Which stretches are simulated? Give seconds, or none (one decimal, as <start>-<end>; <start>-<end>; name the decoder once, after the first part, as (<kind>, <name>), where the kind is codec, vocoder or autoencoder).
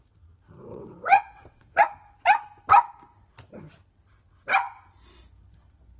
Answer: 0.7-1.8 (vocoder, WaveNeXt)